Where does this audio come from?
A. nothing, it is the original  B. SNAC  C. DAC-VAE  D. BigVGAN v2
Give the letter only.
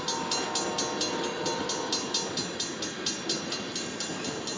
A